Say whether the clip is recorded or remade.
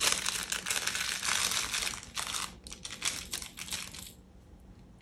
recorded